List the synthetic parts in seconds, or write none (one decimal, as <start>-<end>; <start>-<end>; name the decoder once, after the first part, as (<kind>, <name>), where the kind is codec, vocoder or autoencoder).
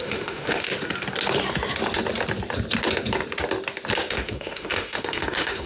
0.0-0.7 (autoencoder, DAC-VAE); 4.1-5.7